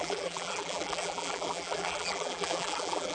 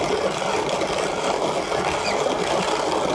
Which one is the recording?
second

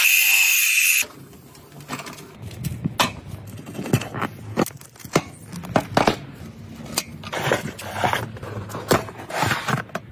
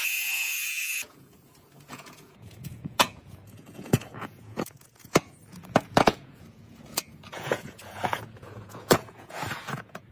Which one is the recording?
first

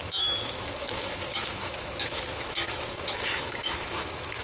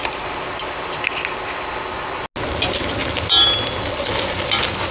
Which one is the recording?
second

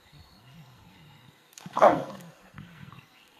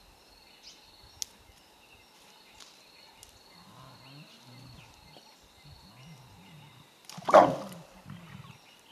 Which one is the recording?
second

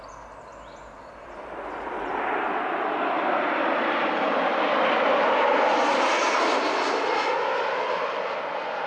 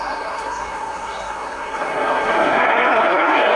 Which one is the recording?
first